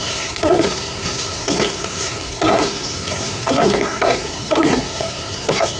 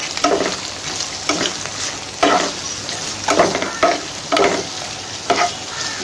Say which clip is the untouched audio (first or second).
second